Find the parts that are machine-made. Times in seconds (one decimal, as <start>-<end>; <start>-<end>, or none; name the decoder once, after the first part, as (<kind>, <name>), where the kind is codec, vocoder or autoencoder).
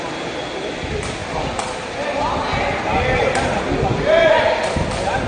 none